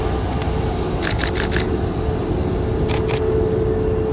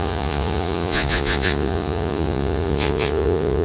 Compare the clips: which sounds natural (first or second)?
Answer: first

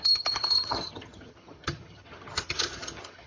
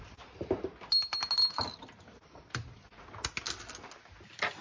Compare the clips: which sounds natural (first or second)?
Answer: second